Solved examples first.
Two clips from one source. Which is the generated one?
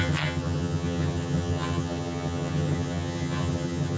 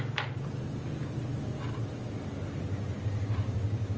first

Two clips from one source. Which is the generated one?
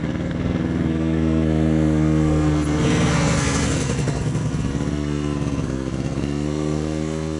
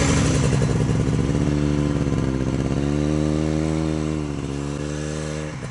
first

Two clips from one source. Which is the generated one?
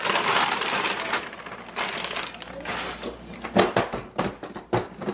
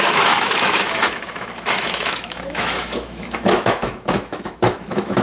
second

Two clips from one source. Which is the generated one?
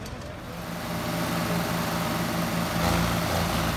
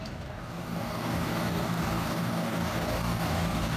second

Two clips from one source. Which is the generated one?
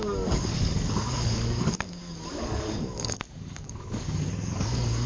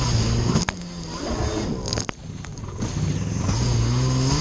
first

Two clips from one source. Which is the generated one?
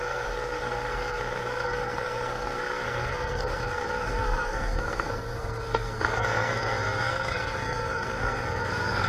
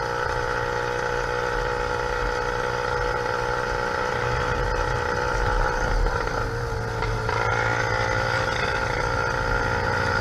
first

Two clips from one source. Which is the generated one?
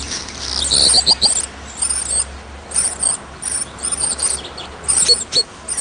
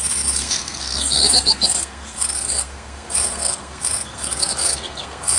second